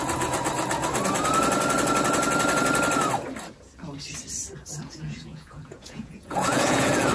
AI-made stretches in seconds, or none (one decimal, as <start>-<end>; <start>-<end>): 4.8-7.1